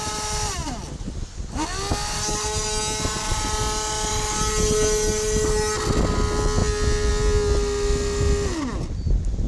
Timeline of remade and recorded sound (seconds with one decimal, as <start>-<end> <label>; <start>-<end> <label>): 0.0-9.5 recorded